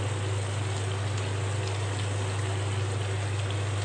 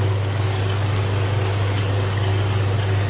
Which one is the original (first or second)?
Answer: first